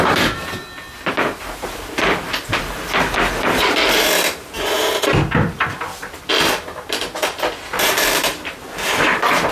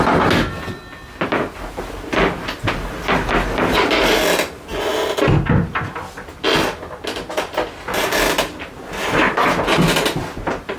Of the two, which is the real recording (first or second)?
second